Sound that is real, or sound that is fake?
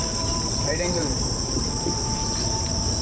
fake